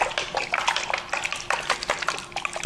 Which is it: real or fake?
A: real